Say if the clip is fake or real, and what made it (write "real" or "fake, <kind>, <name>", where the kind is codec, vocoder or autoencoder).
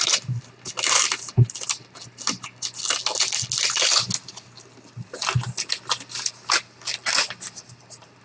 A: real